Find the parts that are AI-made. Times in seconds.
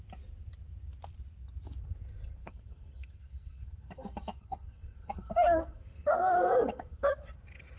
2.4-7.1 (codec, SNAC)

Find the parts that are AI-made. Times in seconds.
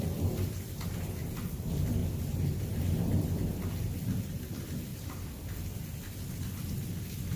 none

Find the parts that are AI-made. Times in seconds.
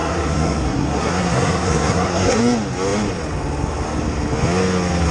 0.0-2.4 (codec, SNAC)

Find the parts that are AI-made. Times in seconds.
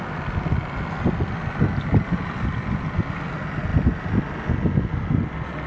none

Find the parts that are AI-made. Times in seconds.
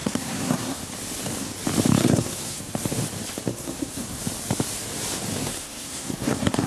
0.0-0.8 (codec, SNAC); 2.0-2.6; 3.5-4.2; 5.4-6.7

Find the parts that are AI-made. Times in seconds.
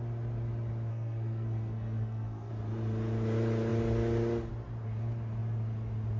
0.9-2.5 (codec, SNAC)